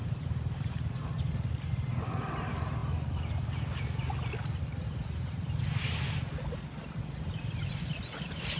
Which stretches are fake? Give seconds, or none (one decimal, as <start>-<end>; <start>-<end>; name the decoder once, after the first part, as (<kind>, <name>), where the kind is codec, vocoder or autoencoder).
none